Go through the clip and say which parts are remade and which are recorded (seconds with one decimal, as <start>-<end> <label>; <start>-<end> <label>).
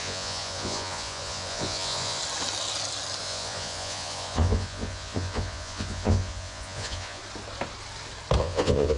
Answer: 0.0-2.2 remade; 2.2-3.2 recorded; 3.2-7.2 remade; 7.2-8.4 recorded; 8.4-9.0 remade